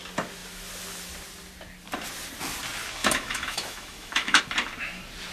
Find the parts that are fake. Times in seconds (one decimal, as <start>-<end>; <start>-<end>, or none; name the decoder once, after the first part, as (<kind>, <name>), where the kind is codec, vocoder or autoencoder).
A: 3.0-4.4 (autoencoder, DAC-VAE)